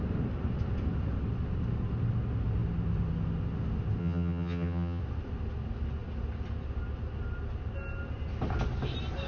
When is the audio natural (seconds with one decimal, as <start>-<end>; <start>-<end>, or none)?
0.0-4.0; 5.0-9.3